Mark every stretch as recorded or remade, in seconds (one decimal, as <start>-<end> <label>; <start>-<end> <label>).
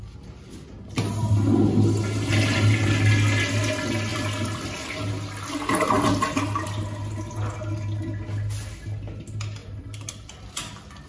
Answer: 0.0-4.1 recorded; 4.1-5.1 remade; 5.1-9.6 recorded; 9.6-10.4 remade; 10.4-11.1 recorded